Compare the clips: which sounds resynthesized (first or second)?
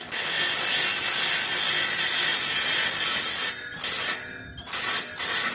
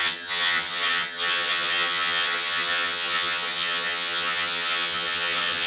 second